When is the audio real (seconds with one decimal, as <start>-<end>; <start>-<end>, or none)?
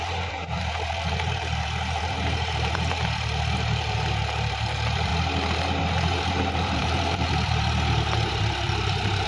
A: 5.1-5.8